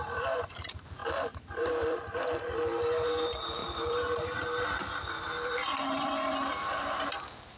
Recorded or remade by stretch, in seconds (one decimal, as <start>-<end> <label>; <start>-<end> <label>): 0.0-7.6 remade